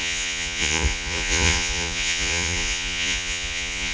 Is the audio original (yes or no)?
no